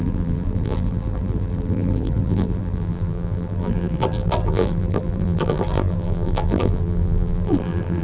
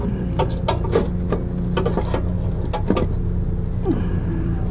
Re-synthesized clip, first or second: first